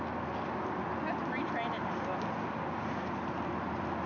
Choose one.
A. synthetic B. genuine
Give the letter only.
B